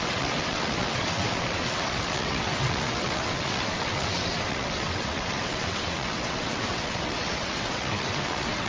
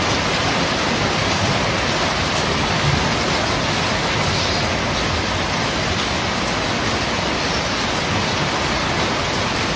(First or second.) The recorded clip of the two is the second